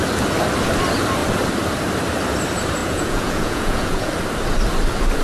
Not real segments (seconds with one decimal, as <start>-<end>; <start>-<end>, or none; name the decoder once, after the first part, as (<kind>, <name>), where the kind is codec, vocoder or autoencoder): 2.8-4.1 (vocoder, Vocos)